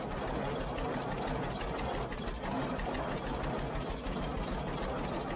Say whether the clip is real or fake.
real